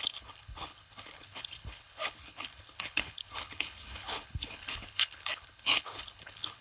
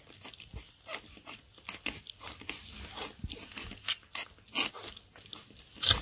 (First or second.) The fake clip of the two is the first